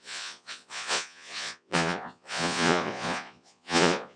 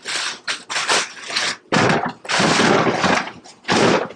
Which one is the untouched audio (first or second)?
second